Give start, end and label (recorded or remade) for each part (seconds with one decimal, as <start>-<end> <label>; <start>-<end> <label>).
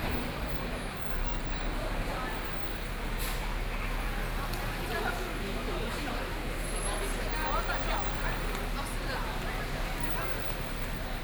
0.0-0.5 recorded; 0.5-1.4 remade; 1.4-5.3 recorded; 5.3-6.1 remade; 6.1-11.2 recorded